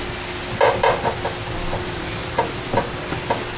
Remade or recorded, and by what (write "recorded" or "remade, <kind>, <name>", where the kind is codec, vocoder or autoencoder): recorded